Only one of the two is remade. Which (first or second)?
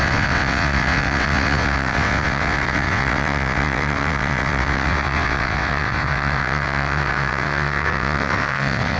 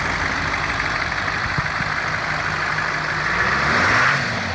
first